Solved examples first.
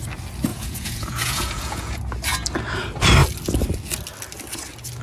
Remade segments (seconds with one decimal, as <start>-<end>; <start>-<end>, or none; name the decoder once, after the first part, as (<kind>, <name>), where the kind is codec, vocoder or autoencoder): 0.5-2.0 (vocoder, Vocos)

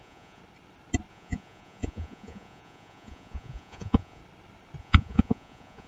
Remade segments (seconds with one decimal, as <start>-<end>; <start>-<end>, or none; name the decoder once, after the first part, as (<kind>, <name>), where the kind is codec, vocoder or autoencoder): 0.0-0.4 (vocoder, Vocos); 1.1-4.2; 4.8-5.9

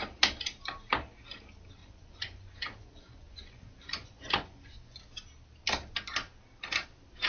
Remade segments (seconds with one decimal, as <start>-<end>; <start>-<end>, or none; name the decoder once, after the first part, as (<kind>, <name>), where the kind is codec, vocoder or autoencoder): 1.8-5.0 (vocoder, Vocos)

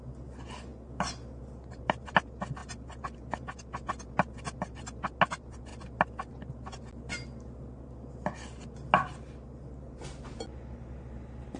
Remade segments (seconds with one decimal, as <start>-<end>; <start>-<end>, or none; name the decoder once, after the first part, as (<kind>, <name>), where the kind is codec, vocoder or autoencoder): none

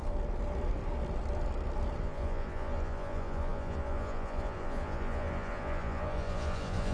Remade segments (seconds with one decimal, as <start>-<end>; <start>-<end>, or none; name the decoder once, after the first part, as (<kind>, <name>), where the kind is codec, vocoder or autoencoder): 2.0-6.9 (vocoder, Vocos)

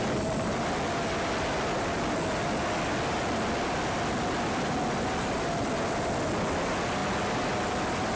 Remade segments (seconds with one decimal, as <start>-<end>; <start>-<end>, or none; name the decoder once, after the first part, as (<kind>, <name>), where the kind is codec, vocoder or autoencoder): none

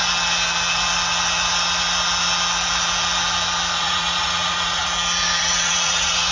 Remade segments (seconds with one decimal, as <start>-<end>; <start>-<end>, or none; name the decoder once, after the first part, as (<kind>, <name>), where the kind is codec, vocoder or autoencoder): 3.8-4.8 (vocoder, Vocos); 5.4-6.3